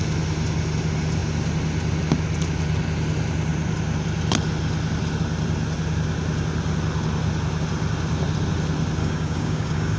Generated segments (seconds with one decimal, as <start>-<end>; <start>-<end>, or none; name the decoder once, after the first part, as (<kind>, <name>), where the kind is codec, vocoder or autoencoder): 9.0-10.0 (codec, DAC)